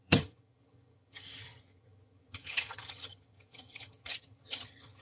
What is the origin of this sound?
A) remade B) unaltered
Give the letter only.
A